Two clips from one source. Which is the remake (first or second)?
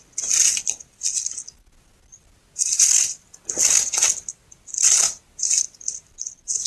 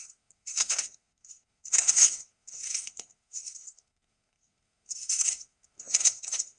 second